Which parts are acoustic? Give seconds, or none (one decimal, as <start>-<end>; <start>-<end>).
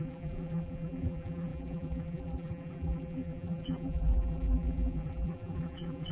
none